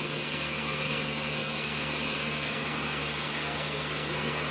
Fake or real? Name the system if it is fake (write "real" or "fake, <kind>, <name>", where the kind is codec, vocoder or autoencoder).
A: fake, codec, SNAC